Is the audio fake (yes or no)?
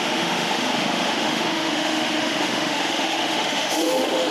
yes